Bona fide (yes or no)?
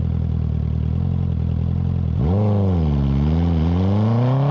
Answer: yes